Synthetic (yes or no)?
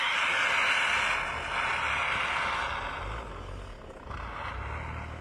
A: no